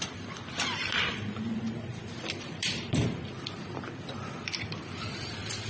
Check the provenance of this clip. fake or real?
fake